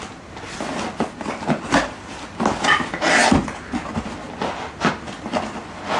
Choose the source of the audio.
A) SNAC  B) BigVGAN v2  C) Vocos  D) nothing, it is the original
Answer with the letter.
D